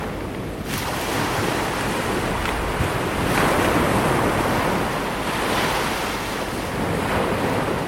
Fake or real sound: real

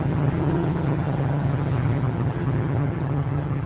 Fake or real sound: fake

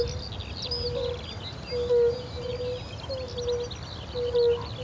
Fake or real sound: real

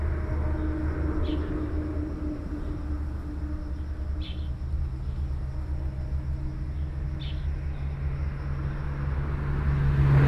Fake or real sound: real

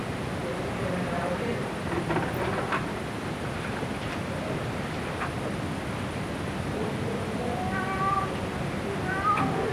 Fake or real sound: real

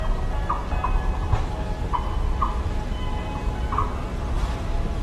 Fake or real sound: real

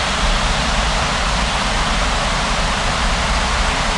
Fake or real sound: real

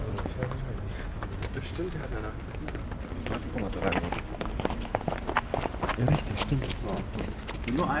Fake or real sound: real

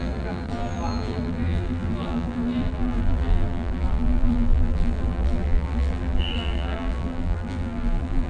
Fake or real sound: fake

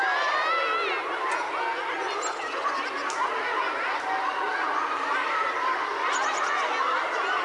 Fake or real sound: real